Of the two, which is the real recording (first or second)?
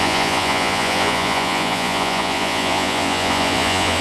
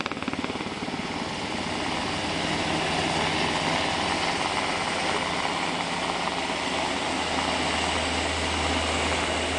second